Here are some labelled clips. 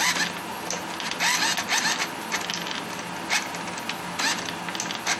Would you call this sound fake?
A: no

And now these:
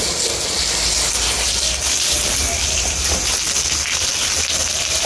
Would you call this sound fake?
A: no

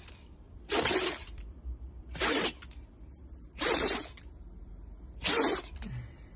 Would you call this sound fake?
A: yes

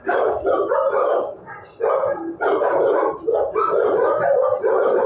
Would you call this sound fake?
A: yes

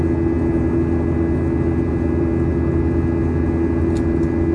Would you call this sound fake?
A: no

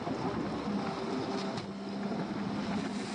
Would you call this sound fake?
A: no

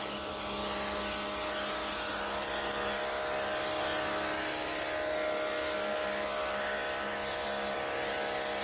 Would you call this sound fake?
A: no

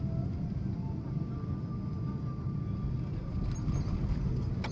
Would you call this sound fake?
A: no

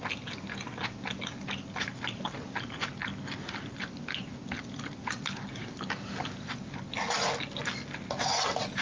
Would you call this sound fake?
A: no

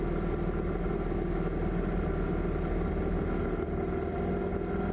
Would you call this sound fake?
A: no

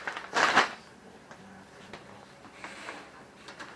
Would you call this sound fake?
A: yes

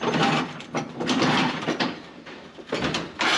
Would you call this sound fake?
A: yes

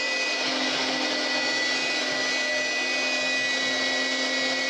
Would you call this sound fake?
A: no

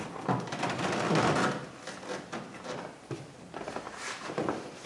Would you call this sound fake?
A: yes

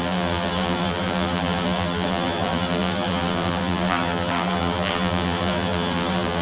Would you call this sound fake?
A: yes